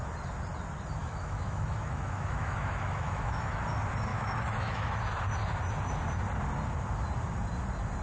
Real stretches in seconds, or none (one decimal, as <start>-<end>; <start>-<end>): 0.0-1.0; 3.6-4.1; 5.0-8.0